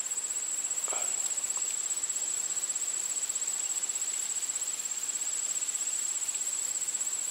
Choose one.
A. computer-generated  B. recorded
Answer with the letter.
B